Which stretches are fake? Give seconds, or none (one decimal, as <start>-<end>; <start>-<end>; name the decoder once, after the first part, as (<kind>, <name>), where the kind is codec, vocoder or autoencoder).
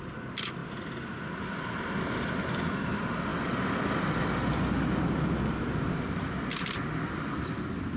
none